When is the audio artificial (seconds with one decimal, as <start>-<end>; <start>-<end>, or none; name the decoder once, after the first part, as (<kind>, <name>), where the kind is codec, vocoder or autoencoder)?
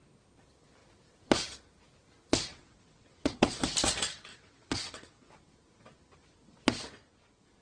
2.5-3.5 (vocoder, WaveNeXt); 4.3-5.3